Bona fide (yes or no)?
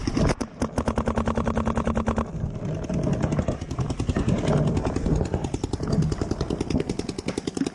yes